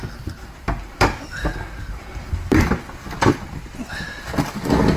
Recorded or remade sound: remade